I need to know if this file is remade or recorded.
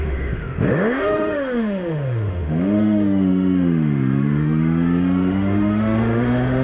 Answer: remade